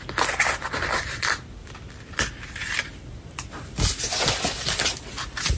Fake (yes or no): no